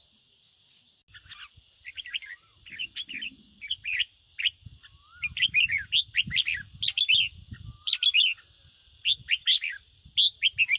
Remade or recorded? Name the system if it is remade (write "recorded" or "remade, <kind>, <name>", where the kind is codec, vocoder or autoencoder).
recorded